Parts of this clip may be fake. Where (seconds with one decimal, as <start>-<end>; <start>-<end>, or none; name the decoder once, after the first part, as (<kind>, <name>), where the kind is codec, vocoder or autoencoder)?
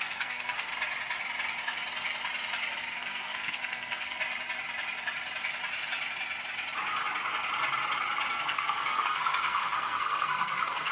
0.0-0.7 (codec, SNAC); 2.8-4.2; 8.3-10.9